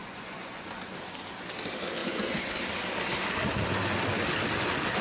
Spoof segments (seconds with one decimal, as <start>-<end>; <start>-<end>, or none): 0.0-0.9; 2.0-2.5